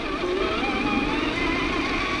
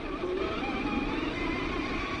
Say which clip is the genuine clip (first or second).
first